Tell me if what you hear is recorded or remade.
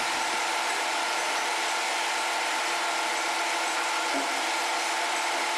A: recorded